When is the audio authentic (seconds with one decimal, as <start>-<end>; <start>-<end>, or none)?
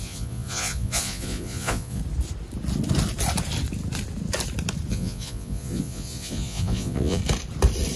2.0-4.9; 7.2-8.0